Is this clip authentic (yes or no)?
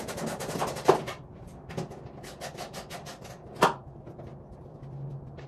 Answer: yes